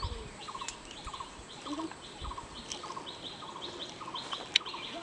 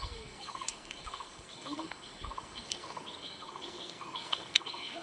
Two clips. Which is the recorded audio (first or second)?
first